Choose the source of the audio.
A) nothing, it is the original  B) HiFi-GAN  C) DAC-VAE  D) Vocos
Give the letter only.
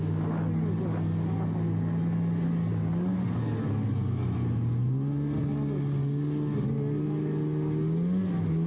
A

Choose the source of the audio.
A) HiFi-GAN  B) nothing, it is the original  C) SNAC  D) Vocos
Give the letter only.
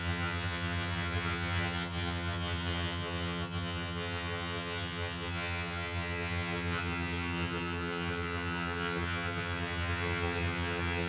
A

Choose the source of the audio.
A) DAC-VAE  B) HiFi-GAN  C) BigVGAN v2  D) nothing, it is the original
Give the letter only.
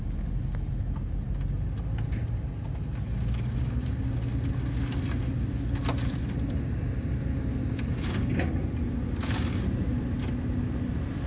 D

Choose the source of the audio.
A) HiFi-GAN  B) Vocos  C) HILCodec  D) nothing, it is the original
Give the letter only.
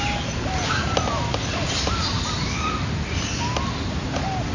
D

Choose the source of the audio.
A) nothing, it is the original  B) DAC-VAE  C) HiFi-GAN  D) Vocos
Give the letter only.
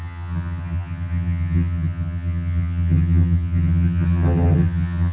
C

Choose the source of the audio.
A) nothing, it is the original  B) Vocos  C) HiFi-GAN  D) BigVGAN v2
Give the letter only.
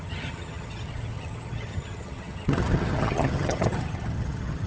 C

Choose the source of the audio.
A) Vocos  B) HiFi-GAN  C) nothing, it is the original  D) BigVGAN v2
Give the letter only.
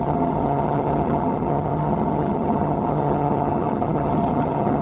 B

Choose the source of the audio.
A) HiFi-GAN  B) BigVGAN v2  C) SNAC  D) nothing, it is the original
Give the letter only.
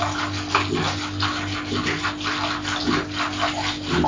D